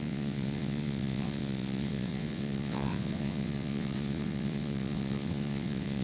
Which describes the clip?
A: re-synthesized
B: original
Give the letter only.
A